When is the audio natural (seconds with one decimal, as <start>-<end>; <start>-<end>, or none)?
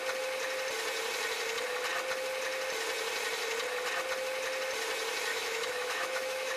0.0-5.3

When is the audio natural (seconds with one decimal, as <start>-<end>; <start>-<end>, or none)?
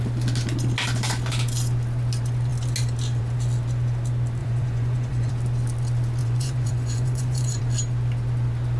0.0-4.4; 5.3-6.2; 7.6-8.8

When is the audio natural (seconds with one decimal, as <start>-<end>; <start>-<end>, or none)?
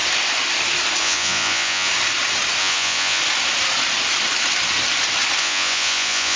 0.0-1.0; 1.9-2.6; 3.2-5.4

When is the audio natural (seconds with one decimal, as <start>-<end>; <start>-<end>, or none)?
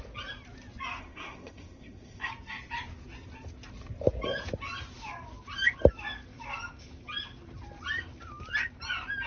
0.0-1.0; 2.3-9.3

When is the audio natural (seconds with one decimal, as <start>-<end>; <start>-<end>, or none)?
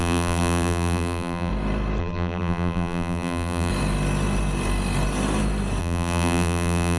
1.5-2.0; 3.7-5.8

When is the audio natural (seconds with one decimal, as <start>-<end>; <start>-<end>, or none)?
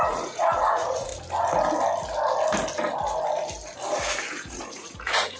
1.1-4.3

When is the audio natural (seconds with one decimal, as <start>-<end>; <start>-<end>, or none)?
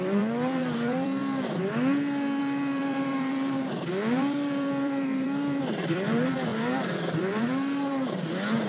1.2-2.4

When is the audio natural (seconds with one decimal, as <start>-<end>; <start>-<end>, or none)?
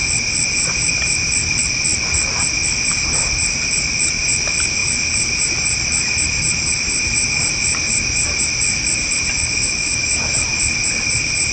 0.0-0.5; 1.9-2.8